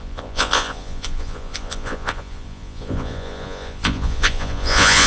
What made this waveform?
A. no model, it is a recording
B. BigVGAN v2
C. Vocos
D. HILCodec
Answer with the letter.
C